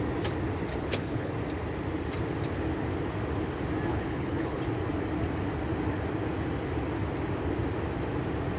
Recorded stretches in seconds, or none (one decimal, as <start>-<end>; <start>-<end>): 0.0-0.7; 1.3-3.9; 4.6-8.6